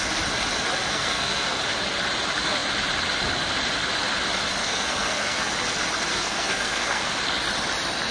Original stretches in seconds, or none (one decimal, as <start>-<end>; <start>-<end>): 0.0-0.9; 1.6-4.6; 5.5-6.1; 7.1-8.1